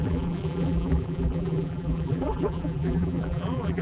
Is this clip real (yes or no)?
no